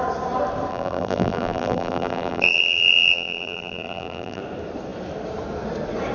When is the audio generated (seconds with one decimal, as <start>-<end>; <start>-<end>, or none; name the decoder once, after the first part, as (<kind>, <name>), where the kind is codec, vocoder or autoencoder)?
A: 0.7-4.4 (vocoder, BigVGAN v2)